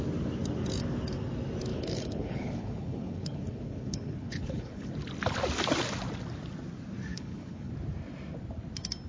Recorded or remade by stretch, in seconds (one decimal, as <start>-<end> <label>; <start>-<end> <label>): 0.0-1.7 recorded; 1.7-4.9 remade; 4.9-7.1 recorded; 7.1-7.7 remade; 7.7-9.1 recorded